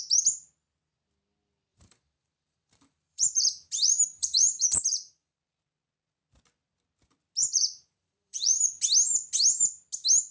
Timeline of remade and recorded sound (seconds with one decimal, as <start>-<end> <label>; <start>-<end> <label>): 0.0-1.7 recorded; 1.7-5.4 remade; 5.4-7.4 recorded; 7.4-8.8 remade; 8.8-10.3 recorded